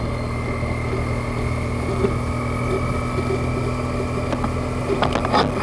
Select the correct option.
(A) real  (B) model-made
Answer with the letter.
A